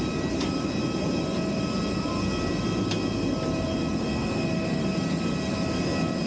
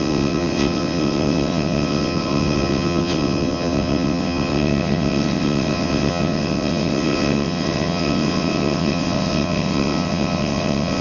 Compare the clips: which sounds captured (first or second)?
first